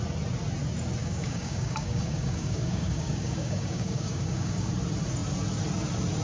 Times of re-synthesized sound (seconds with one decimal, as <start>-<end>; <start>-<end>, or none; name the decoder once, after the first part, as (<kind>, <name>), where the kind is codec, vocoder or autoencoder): 1.0-4.7 (codec, DAC)